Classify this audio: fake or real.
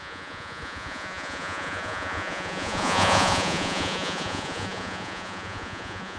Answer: fake